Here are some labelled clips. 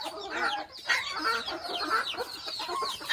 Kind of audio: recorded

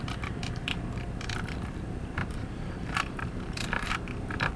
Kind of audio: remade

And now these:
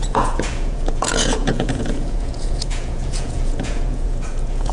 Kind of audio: remade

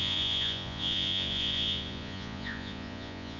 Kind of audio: remade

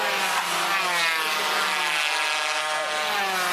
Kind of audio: recorded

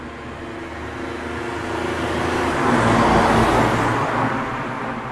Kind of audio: recorded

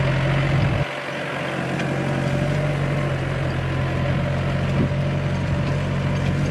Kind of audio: recorded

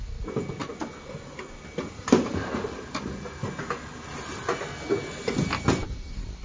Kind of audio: recorded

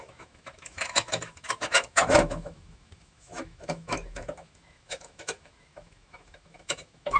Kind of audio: remade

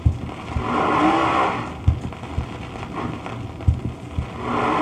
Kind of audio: recorded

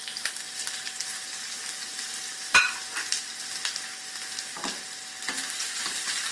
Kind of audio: recorded